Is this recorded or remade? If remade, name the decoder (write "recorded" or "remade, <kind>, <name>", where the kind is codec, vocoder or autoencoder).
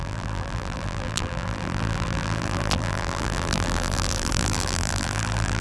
remade, vocoder, BigVGAN v2